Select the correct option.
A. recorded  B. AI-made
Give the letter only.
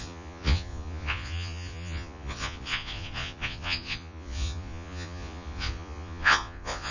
B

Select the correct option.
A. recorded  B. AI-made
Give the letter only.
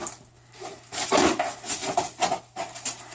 A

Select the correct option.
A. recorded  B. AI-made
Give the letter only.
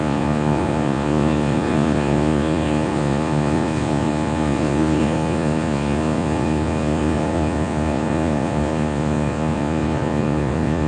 B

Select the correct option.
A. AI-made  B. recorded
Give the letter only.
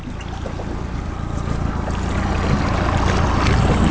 B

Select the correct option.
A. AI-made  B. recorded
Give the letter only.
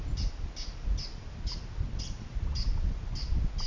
B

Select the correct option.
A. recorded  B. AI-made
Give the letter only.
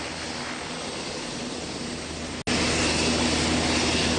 A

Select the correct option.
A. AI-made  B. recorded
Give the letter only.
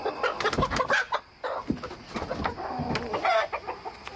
B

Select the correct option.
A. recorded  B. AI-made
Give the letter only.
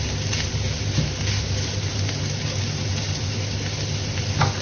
A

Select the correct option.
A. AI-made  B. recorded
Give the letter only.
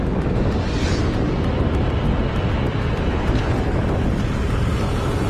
B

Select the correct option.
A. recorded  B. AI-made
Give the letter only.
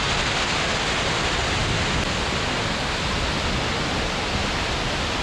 A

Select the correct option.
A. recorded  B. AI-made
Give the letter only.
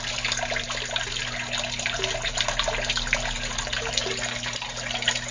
A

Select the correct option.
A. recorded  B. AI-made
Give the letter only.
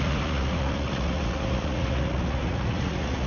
B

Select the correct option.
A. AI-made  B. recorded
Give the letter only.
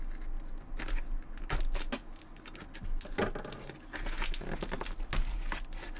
B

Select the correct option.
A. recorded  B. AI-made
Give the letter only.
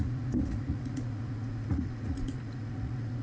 B